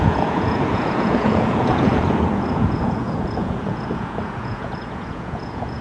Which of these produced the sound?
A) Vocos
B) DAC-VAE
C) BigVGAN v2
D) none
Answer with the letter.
A